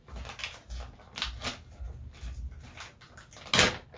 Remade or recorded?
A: recorded